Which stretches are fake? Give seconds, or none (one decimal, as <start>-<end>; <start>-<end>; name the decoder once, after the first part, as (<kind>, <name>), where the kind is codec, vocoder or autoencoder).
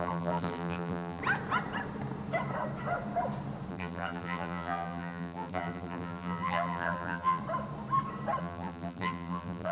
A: 0.0-1.2 (vocoder, BigVGAN v2); 3.7-7.4; 8.4-9.7